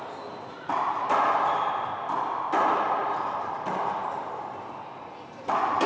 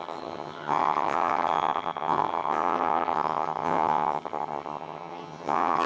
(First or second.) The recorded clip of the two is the first